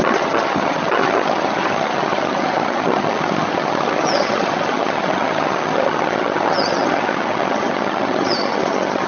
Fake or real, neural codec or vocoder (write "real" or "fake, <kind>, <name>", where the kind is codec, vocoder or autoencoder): fake, vocoder, HiFi-GAN